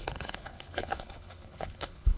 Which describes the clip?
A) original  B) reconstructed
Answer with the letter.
B